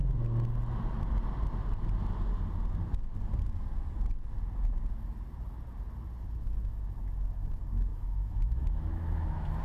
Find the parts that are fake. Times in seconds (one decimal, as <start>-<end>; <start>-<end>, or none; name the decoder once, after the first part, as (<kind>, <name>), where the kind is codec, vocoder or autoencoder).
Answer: 7.9-9.6 (autoencoder, DAC-VAE)